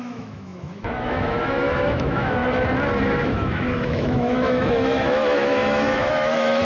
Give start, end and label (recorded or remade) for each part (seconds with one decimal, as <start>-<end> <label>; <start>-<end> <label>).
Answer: 0.0-2.4 remade; 2.4-3.0 recorded; 3.0-6.6 remade